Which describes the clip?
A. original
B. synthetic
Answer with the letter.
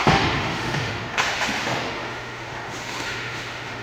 B